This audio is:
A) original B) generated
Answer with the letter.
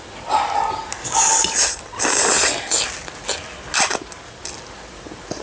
A